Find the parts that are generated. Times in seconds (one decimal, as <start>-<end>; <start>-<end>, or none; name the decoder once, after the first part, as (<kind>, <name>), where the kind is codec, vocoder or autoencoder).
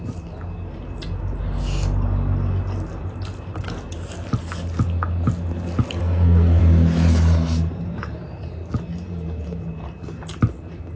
6.0-6.6 (codec, SNAC)